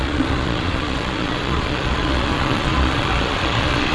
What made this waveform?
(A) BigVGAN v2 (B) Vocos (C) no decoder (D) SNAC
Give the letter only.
B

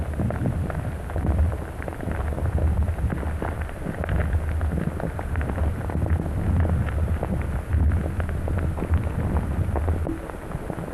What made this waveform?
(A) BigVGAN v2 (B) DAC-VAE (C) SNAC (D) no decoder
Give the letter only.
D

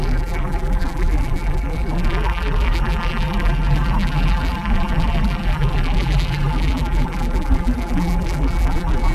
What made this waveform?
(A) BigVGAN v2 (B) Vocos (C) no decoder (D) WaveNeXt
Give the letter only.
A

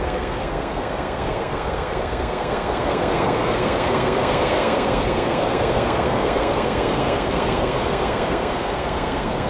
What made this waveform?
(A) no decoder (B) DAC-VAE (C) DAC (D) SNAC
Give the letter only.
D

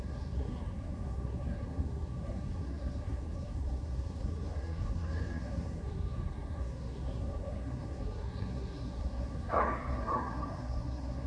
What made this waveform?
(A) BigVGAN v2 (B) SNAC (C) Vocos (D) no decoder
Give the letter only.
B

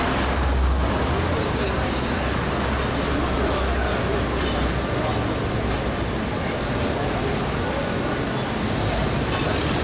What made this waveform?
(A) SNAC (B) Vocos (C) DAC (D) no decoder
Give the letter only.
D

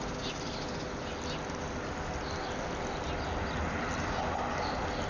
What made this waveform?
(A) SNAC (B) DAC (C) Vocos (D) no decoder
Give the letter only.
D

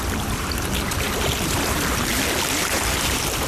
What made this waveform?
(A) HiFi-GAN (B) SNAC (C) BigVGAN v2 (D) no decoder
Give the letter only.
C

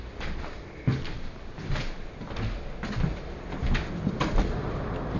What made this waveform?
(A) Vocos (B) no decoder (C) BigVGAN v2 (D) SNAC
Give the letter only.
B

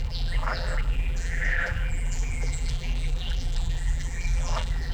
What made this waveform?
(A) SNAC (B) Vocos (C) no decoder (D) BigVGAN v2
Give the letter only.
D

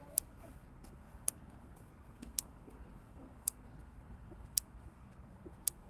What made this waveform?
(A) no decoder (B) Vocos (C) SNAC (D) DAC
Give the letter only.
C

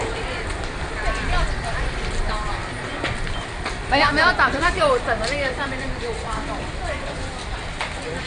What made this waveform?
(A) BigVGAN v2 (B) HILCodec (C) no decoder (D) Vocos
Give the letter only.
A